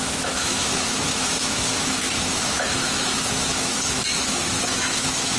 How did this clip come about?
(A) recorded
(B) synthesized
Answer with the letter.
B